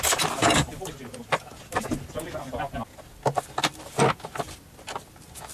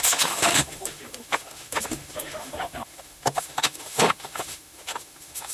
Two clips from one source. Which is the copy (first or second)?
second